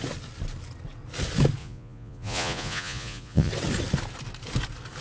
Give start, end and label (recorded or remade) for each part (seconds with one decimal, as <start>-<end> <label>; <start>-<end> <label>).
0.0-1.6 recorded; 1.6-3.5 remade; 3.5-5.0 recorded